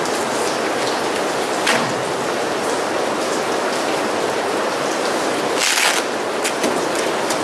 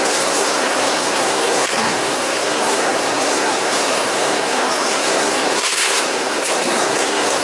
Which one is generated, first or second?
second